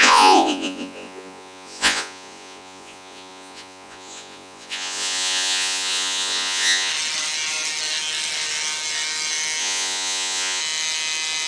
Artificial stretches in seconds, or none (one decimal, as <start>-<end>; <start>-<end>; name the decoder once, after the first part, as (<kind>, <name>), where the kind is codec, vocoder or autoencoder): 0.0-6.9 (vocoder, Vocos); 9.6-10.6